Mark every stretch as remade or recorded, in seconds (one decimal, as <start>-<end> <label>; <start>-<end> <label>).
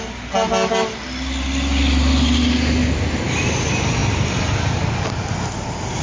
0.0-2.8 recorded; 2.8-3.5 remade; 3.5-6.0 recorded